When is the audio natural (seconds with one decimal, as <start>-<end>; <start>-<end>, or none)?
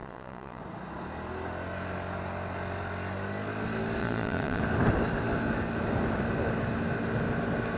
0.6-4.0; 4.6-7.8